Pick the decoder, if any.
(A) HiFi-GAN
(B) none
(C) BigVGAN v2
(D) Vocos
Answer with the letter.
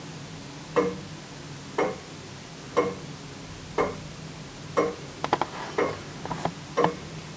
B